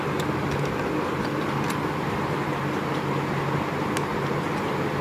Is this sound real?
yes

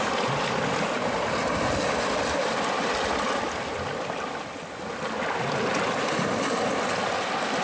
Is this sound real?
yes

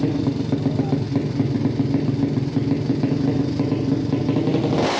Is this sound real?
yes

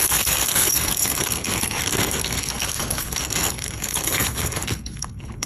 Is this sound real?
no